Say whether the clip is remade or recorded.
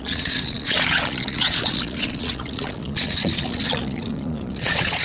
remade